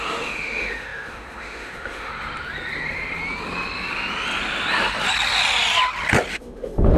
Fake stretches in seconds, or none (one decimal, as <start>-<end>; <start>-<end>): 0.0-2.1; 6.3-7.0